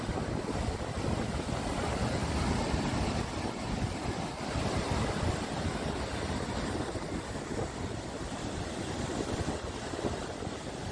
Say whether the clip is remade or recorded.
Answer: recorded